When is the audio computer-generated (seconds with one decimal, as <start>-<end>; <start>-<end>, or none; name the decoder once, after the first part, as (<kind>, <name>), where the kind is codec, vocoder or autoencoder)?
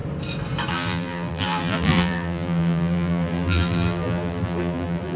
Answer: 0.7-5.2 (vocoder, BigVGAN v2)